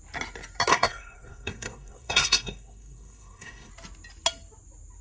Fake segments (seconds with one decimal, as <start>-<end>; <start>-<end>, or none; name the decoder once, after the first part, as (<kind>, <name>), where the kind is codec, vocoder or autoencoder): 0.7-3.7 (codec, SNAC)